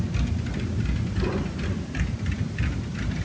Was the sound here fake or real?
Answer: real